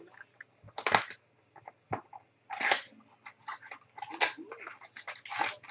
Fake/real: real